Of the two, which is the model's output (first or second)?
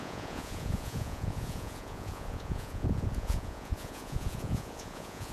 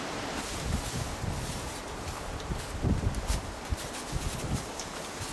first